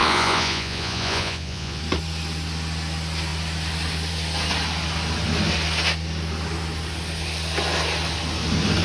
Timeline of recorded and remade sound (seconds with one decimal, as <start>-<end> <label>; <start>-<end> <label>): 0.0-1.8 remade; 1.8-8.8 recorded